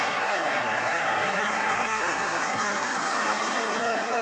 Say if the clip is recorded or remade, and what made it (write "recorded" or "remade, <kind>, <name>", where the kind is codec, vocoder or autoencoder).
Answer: remade, codec, SNAC